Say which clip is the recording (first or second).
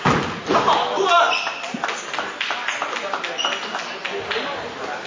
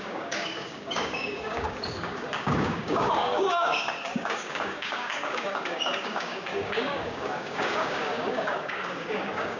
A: first